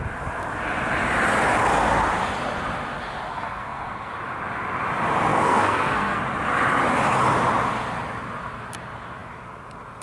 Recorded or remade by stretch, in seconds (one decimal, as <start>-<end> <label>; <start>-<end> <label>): 0.0-3.3 recorded; 3.3-4.1 remade; 4.1-5.3 recorded; 5.3-6.2 remade; 6.2-10.0 recorded

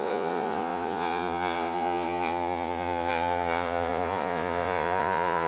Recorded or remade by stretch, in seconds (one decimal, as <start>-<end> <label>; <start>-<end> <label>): 0.0-5.5 remade